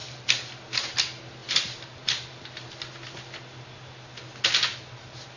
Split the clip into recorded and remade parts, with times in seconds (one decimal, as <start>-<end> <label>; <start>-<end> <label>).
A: 0.0-5.4 recorded